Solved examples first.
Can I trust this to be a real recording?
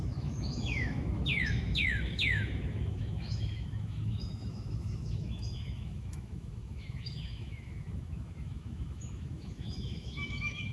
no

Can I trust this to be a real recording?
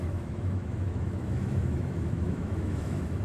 no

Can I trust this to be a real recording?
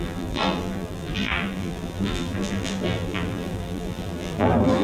no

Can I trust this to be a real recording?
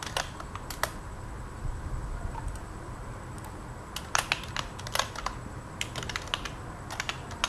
yes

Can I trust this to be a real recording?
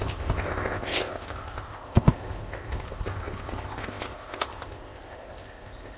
no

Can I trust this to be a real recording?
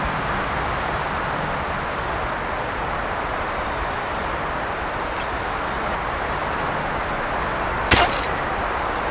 yes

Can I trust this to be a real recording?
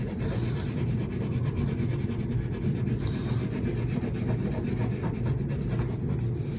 yes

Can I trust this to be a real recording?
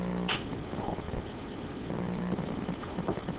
yes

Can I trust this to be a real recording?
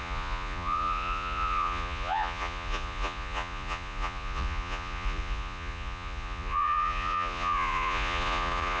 no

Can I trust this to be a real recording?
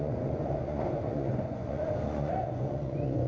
no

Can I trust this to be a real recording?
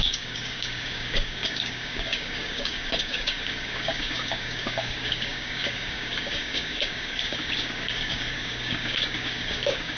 no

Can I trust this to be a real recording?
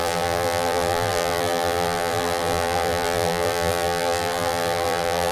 no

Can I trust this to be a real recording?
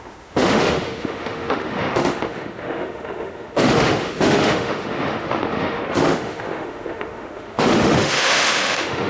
no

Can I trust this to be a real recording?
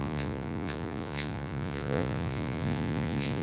no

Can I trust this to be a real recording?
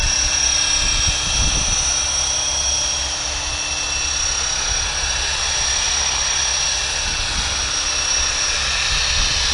yes